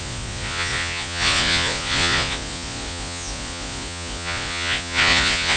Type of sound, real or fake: fake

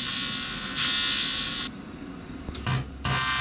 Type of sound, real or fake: real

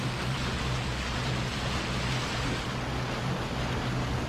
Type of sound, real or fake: real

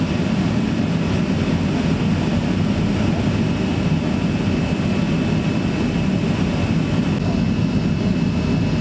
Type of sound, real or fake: real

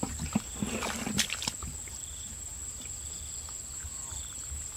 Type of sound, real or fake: real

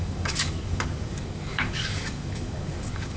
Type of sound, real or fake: fake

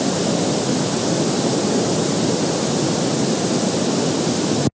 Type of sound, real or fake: real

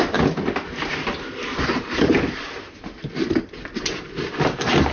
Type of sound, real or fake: real